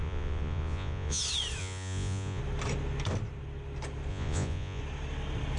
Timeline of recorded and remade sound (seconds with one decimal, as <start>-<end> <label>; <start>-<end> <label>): 0.0-1.2 remade; 1.2-1.6 recorded; 1.6-2.4 remade; 2.4-4.1 recorded; 4.1-4.8 remade; 4.8-5.6 recorded